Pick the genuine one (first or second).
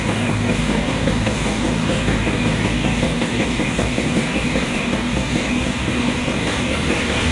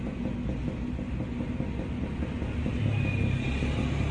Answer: second